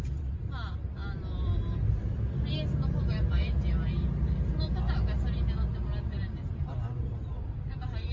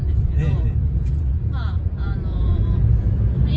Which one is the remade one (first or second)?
second